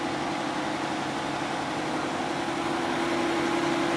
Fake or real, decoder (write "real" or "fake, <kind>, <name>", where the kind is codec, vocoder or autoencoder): real